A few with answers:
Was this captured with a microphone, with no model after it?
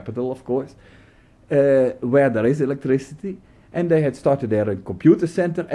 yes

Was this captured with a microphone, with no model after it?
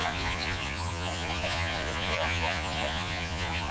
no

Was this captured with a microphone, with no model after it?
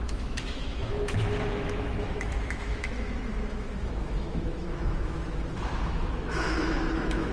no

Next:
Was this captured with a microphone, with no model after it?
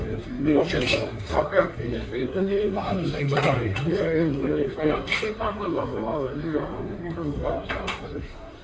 no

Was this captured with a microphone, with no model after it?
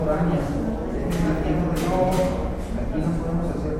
yes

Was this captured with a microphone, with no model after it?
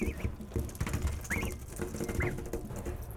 yes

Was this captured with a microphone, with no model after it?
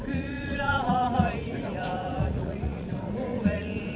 no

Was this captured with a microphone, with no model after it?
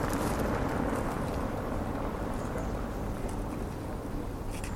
yes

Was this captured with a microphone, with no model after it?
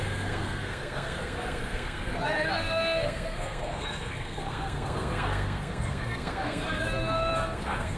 no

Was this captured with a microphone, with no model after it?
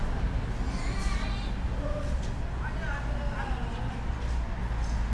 yes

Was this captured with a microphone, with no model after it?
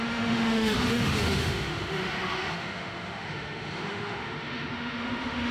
no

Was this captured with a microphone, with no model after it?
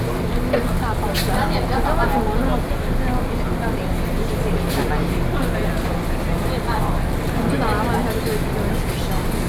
yes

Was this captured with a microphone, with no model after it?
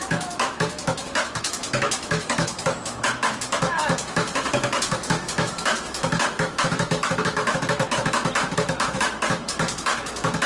no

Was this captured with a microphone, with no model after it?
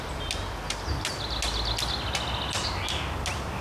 yes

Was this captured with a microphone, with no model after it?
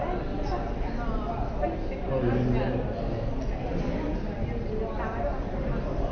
yes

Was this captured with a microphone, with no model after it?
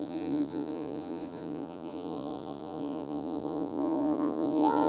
no